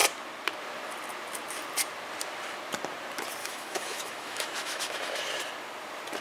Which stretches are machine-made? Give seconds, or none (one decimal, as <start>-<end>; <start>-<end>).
3.4-5.2